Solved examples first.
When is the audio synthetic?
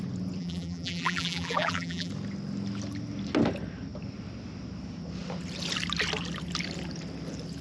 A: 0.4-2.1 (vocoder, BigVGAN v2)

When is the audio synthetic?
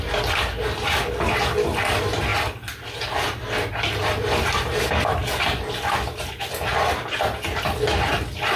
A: none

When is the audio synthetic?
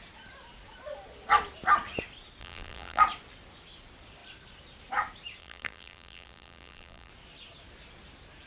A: 2.4-3.0 (vocoder, BigVGAN v2); 5.4-7.1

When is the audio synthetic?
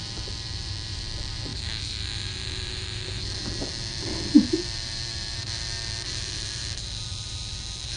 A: 0.0-8.0 (vocoder, BigVGAN v2)